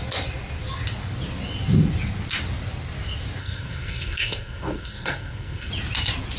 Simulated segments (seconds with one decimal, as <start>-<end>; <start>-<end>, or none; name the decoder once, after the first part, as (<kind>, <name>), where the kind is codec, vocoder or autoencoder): 3.4-5.7 (codec, SNAC)